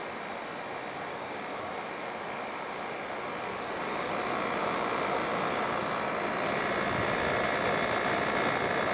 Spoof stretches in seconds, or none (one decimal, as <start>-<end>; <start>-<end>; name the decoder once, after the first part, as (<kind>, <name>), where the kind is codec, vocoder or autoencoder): 1.1-1.7 (codec, DAC); 3.5-4.1